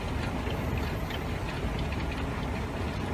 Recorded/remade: recorded